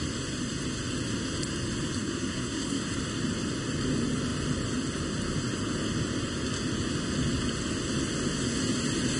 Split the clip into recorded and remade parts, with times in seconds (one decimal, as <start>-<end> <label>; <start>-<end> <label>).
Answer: 0.0-2.0 recorded; 2.0-2.8 remade; 2.8-9.2 recorded